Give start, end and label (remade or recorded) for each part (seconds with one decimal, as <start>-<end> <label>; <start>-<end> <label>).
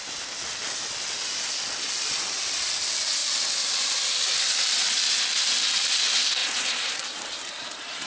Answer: 0.0-6.4 recorded; 6.4-8.1 remade